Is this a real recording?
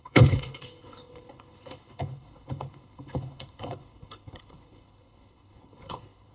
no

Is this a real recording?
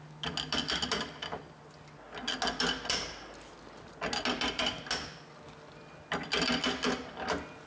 yes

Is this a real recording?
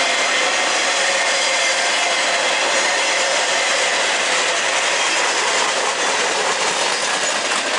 yes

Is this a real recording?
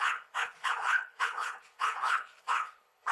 no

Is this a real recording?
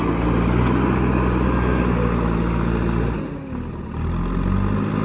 yes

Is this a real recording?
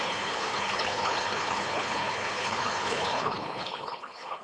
no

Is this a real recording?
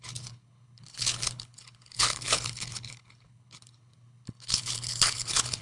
no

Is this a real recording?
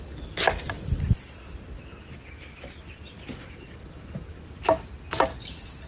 yes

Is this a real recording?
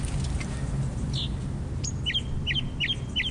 yes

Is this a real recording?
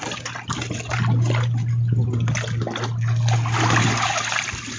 yes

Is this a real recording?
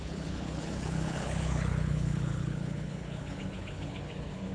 no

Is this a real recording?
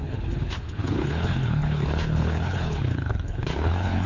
no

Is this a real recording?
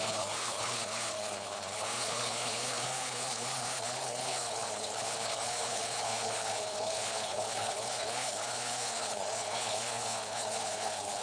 no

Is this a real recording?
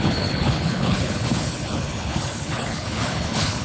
no